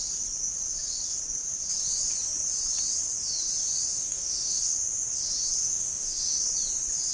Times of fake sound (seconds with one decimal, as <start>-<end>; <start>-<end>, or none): 3.9-4.7; 5.6-6.4